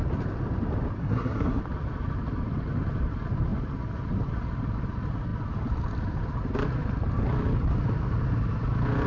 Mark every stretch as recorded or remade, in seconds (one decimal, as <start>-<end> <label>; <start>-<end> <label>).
0.0-1.0 recorded; 1.0-1.6 remade; 1.6-9.1 recorded